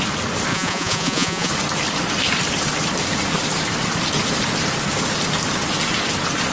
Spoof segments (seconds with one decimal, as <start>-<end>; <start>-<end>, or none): 0.5-1.5